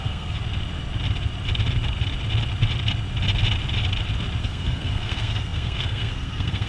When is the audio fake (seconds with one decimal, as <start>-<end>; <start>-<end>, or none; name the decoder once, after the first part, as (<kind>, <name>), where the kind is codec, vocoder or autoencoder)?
0.0-0.4 (codec, SNAC); 4.4-6.7